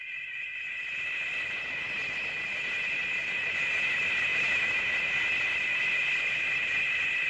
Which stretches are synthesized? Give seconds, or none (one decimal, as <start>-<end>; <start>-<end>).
4.3-4.8